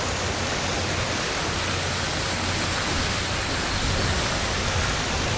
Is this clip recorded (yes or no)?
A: yes